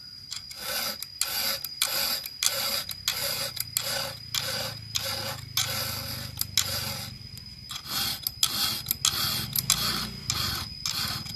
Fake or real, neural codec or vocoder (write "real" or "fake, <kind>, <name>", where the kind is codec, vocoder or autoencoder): real